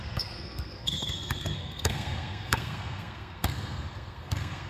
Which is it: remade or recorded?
remade